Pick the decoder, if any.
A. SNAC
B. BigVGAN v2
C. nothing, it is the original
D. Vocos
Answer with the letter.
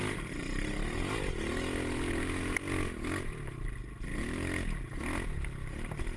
C